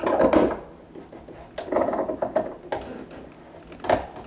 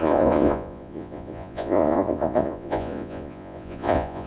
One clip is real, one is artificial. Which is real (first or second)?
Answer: first